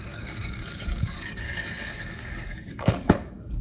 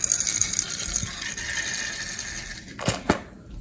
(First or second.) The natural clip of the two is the second